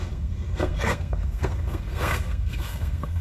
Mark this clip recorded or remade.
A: remade